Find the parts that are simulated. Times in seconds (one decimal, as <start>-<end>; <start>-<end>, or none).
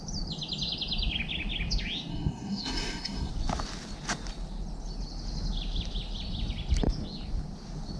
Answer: 2.1-3.3